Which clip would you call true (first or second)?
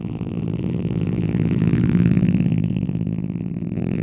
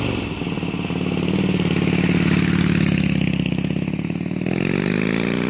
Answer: second